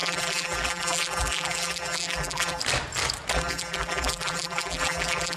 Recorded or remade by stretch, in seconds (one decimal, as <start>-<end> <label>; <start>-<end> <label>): 0.0-2.6 remade; 2.6-3.3 recorded; 3.3-5.4 remade

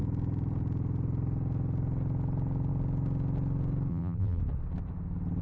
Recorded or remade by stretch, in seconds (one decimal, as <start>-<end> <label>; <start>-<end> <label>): 0.0-3.9 recorded; 3.9-4.4 remade; 4.4-5.4 recorded

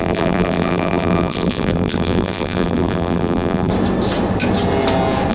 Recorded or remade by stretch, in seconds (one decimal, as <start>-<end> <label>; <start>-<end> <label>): 0.0-3.7 remade; 3.7-5.3 recorded

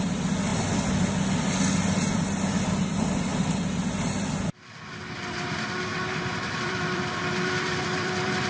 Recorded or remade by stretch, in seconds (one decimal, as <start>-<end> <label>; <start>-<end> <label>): 0.0-0.5 recorded; 0.5-1.1 remade; 1.1-5.9 recorded; 5.9-8.5 remade

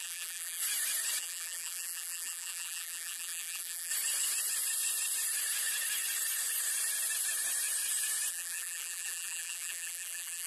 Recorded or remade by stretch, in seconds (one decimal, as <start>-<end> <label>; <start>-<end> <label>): 0.0-0.6 remade; 0.6-1.2 recorded; 1.2-3.9 remade; 3.9-8.3 recorded; 8.3-10.5 remade

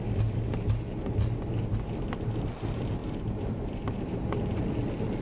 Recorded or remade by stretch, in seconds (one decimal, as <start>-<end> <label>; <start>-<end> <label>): 0.0-3.0 recorded; 3.0-4.6 remade; 4.6-5.2 recorded

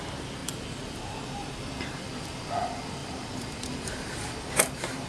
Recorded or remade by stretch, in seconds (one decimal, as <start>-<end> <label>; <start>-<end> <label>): 0.0-5.1 remade

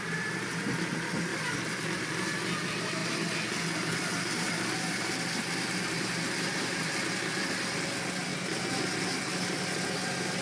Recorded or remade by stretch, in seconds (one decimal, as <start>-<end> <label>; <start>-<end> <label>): 0.0-1.3 recorded; 1.3-1.8 remade; 1.8-10.4 recorded